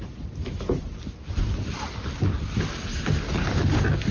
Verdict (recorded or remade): recorded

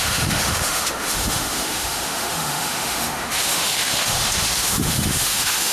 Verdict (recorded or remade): remade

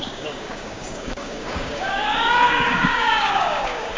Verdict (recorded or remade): remade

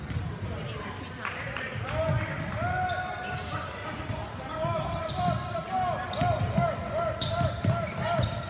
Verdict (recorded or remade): recorded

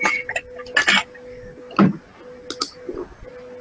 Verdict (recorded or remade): recorded